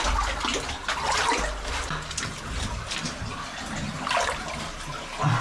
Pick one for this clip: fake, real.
real